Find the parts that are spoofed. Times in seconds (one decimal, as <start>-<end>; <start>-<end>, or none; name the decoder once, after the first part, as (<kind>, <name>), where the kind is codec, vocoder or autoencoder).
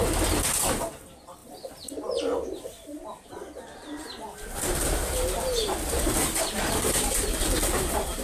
1.4-3.3 (vocoder, BigVGAN v2)